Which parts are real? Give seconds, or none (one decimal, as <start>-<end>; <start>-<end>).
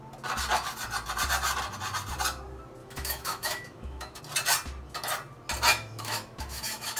0.0-2.8; 4.2-5.7